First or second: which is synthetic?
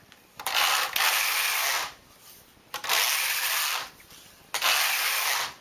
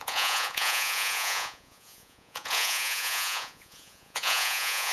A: second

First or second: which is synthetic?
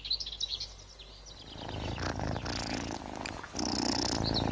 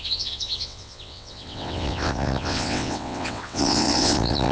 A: second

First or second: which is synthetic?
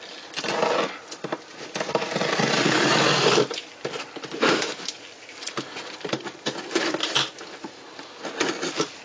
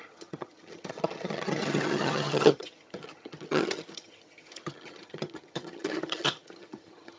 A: second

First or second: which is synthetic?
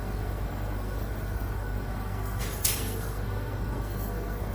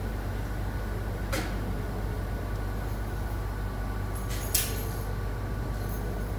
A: first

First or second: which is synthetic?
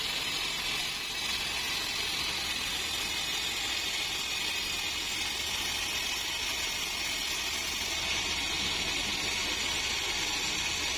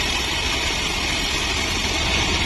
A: second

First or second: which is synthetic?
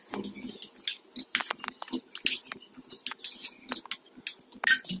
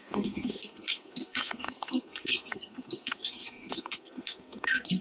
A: second